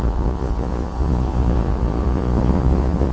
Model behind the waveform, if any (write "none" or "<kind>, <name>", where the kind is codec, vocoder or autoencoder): vocoder, Vocos